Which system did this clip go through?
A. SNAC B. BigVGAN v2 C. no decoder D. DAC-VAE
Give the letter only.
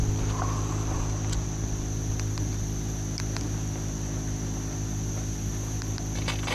C